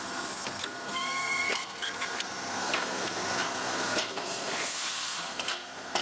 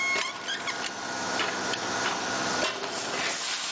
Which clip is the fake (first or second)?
first